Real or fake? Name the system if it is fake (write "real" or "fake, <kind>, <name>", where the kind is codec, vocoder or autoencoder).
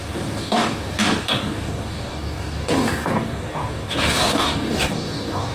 fake, codec, DAC